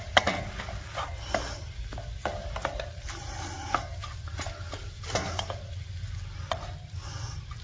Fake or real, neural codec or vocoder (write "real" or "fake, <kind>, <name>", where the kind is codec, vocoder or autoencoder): real